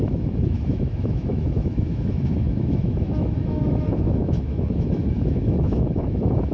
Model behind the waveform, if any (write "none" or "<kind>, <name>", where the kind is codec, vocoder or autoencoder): autoencoder, DAC-VAE